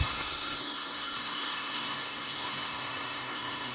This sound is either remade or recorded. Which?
remade